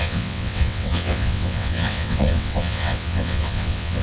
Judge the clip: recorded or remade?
remade